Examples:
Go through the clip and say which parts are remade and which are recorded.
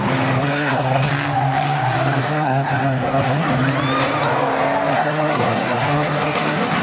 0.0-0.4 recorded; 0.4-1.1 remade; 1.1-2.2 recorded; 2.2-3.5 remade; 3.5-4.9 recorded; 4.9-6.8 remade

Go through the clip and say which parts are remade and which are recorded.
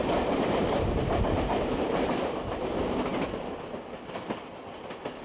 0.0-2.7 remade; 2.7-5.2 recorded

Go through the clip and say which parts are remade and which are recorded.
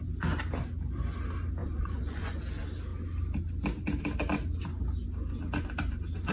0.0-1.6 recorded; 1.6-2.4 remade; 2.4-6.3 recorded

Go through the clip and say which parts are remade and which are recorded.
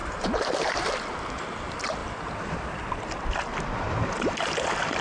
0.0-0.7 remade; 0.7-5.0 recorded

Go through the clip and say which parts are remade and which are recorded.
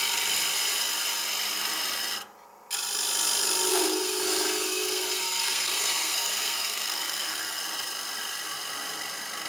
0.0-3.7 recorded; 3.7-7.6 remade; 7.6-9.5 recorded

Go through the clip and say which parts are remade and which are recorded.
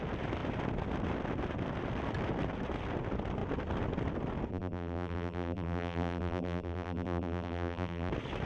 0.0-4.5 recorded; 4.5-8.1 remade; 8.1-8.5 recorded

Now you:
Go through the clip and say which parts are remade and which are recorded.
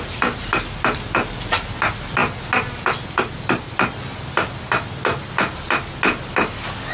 0.0-6.9 recorded